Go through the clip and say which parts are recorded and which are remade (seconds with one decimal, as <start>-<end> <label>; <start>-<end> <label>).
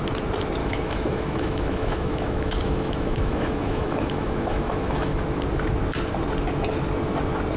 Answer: 0.0-0.6 recorded; 0.6-5.2 remade; 5.2-7.6 recorded